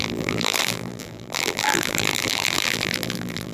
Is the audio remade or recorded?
remade